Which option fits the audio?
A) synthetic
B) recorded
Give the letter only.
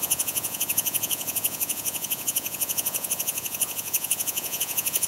A